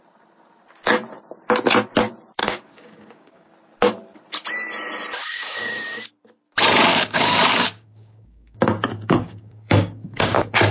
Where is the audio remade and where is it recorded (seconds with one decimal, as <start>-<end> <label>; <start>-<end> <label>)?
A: 0.0-2.4 recorded; 2.4-3.5 remade; 3.5-5.2 recorded; 5.2-5.7 remade; 5.7-6.9 recorded; 6.9-10.7 remade